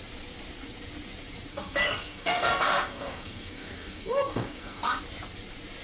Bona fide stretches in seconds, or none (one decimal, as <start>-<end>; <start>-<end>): 0.0-1.5; 5.0-5.8